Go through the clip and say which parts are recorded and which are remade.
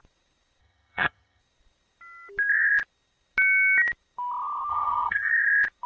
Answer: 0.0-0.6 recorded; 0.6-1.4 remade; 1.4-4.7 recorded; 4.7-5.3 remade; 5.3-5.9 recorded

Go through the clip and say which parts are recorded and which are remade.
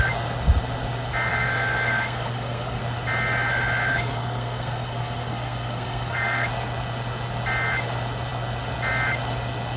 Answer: 0.0-1.3 recorded; 1.3-2.8 remade; 2.8-3.9 recorded; 3.9-6.5 remade; 6.5-9.8 recorded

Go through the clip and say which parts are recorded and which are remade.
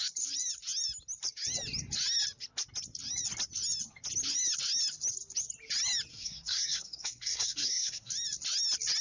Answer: 0.0-6.1 recorded; 6.1-8.1 remade; 8.1-9.0 recorded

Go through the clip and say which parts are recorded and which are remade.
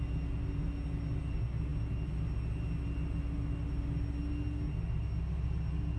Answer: 0.0-6.0 recorded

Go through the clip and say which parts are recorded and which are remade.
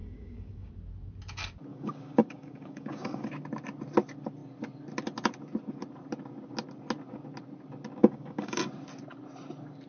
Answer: 0.0-0.7 remade; 0.7-1.7 recorded; 1.7-3.3 remade; 3.3-8.0 recorded; 8.0-8.6 remade; 8.6-9.9 recorded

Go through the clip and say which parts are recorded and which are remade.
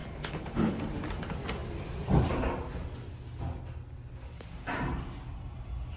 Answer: 0.0-0.8 remade; 0.8-6.0 recorded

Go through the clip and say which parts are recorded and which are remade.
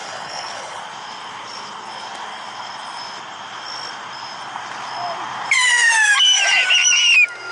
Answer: 0.0-0.8 remade; 0.8-7.5 recorded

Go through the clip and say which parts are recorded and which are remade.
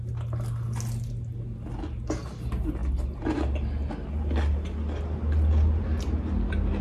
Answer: 0.0-6.8 recorded